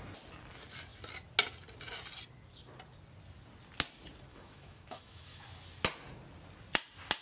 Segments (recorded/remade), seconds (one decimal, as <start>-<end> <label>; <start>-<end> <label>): 0.0-4.3 recorded; 4.3-5.4 remade; 5.4-7.2 recorded